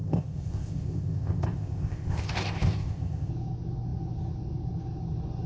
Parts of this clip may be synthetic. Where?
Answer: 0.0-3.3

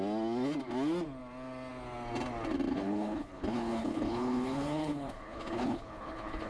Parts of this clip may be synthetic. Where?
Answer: 2.7-6.5

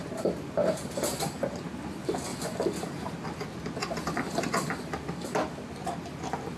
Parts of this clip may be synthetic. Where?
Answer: none

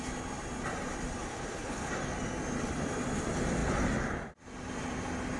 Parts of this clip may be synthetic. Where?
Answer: 1.3-1.9